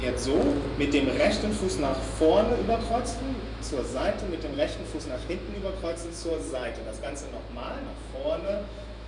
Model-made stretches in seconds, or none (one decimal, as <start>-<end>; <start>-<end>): 1.2-6.3; 7.9-9.1